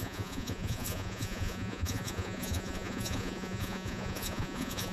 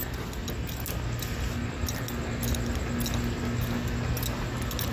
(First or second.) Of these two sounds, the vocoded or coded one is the first